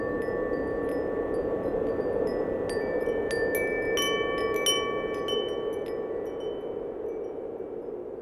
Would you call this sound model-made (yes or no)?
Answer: no